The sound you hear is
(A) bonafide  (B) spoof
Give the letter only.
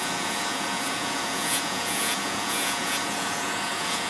B